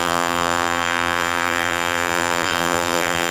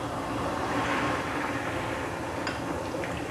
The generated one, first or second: first